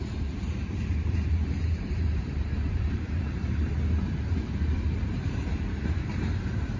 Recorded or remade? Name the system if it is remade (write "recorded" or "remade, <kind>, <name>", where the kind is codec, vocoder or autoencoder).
remade, vocoder, BigVGAN v2